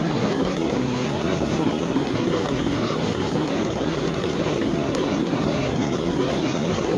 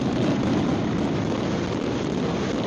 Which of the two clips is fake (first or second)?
first